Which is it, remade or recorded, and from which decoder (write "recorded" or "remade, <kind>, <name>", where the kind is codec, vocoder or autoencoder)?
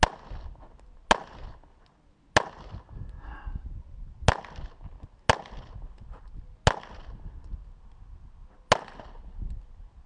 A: recorded